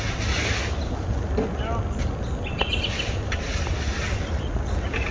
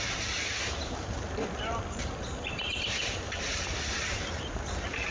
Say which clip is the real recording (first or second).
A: first